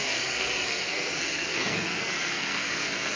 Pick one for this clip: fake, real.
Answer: fake